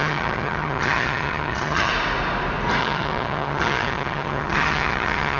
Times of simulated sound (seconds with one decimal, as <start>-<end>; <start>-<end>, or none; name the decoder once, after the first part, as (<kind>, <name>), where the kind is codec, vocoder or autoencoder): 0.0-1.9 (vocoder, HiFi-GAN); 2.8-5.4